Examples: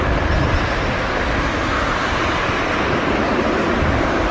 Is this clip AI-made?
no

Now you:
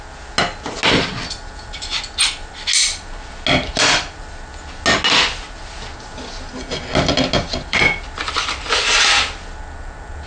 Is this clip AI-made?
no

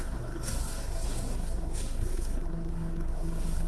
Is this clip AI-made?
yes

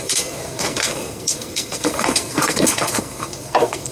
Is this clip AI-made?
yes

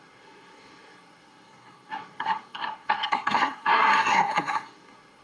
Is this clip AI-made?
yes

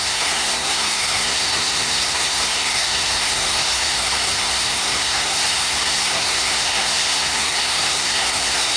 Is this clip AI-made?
yes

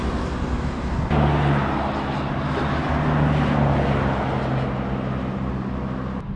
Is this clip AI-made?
no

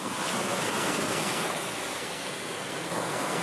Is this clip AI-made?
yes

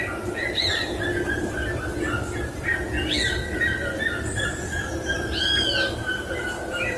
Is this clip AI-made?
no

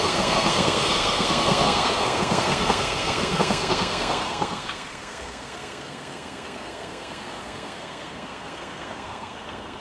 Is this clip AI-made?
yes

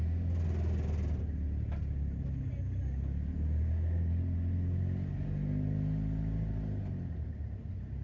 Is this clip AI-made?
no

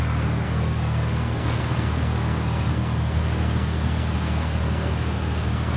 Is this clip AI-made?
yes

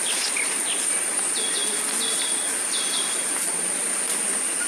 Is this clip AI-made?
no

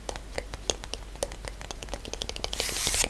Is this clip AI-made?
no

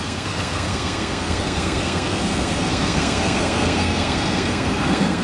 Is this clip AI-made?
yes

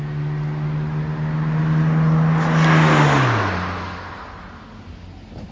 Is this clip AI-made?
no